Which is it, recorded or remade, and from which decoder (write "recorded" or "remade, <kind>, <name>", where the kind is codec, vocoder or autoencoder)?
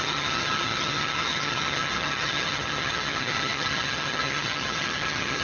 remade, vocoder, HiFi-GAN